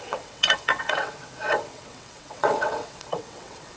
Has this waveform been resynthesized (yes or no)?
yes